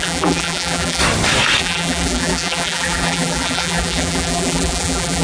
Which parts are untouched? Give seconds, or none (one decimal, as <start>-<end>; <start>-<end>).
1.0-1.6